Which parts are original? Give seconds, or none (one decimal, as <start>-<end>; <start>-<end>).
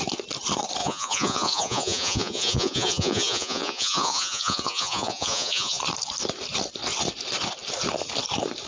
0.0-0.8; 5.8-8.7